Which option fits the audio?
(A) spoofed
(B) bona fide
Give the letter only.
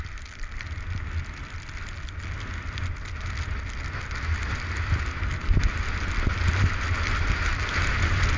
B